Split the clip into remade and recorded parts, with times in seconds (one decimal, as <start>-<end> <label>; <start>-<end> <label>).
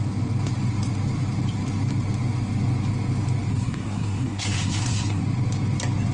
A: 0.0-3.5 recorded; 3.5-5.2 remade; 5.2-6.1 recorded